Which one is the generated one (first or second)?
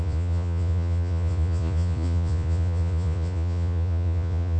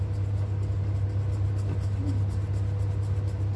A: first